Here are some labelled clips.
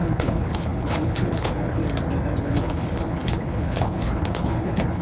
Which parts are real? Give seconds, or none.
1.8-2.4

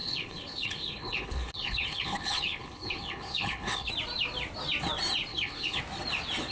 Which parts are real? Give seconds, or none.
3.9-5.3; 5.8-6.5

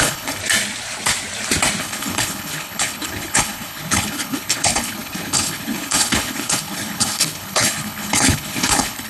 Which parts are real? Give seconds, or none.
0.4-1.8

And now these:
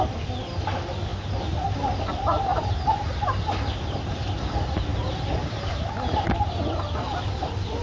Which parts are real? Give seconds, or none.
0.0-7.8